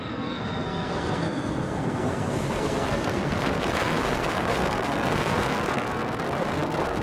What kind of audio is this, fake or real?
fake